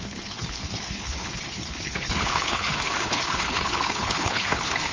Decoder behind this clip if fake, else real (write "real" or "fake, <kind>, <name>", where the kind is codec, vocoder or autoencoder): fake, codec, HILCodec